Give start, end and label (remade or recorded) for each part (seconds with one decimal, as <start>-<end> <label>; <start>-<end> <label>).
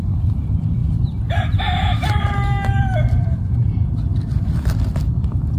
0.0-5.6 remade